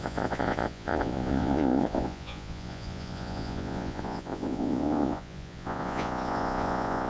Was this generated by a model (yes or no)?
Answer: yes